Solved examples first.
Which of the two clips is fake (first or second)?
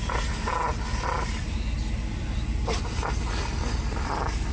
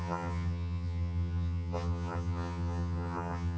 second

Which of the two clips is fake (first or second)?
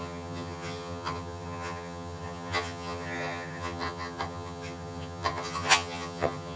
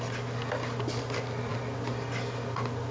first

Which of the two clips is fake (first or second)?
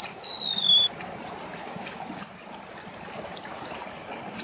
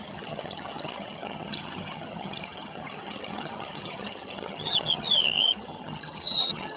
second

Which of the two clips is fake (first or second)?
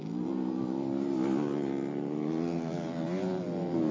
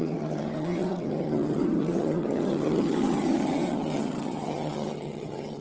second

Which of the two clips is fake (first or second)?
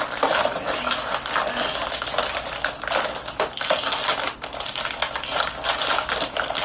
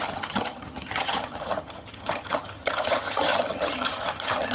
second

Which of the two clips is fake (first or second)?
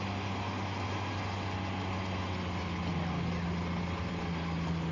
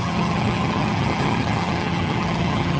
second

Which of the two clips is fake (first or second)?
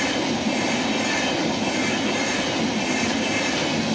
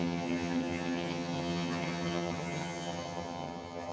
second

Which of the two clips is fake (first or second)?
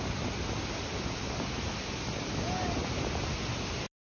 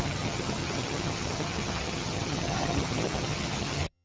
second